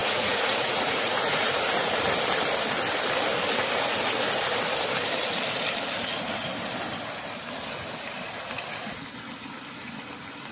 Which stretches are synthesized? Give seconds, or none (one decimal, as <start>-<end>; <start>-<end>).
0.0-1.5